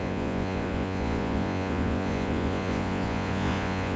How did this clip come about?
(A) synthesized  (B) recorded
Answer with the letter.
A